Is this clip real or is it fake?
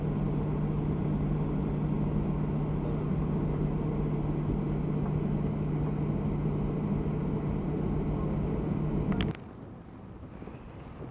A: real